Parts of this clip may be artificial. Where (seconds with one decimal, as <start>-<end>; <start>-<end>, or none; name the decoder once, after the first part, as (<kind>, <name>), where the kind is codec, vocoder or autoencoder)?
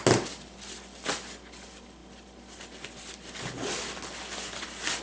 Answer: none